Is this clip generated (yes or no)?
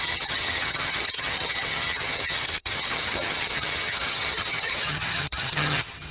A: yes